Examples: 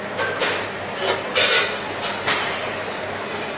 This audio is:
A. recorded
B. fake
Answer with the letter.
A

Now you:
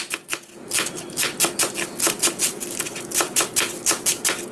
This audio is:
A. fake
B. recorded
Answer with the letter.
B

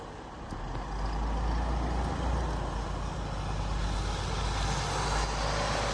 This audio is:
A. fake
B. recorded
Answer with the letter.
B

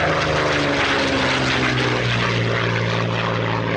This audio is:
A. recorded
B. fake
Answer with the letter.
A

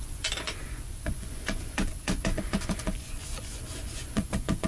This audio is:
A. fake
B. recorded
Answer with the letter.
A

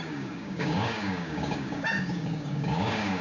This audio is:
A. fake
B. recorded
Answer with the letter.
A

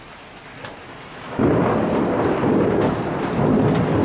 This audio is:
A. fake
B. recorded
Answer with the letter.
B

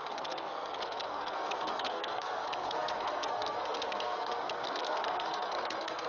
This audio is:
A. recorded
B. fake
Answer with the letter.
B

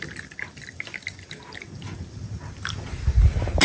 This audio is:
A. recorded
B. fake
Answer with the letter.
A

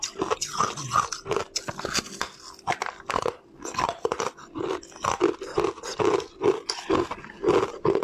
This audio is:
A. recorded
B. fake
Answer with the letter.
A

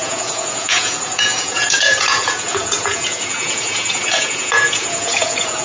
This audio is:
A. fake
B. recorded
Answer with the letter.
A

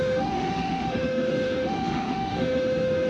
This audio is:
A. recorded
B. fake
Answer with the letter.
B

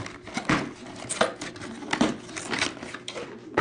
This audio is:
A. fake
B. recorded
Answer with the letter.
B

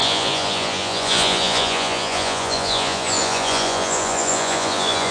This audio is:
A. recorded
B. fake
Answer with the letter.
B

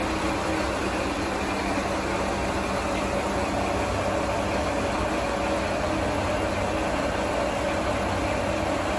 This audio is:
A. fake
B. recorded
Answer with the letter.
B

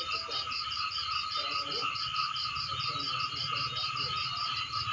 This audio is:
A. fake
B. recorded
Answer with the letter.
B